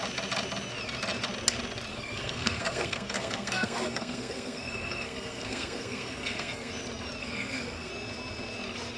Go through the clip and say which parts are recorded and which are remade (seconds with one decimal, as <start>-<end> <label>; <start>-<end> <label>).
0.0-1.9 recorded; 1.9-6.7 remade; 6.7-7.2 recorded; 7.2-7.9 remade; 7.9-9.0 recorded